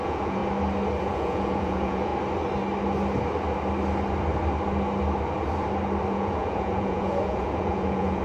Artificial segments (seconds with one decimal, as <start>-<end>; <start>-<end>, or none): 0.0-0.4; 1.0-2.1; 6.1-8.2